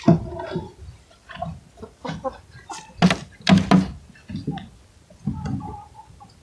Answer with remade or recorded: recorded